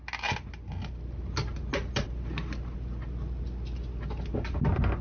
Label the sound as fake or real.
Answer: real